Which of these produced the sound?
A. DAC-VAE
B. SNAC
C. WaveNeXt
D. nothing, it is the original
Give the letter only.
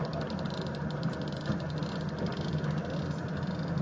D